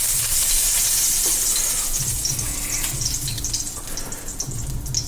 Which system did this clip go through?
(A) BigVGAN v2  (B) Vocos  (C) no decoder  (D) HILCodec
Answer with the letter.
C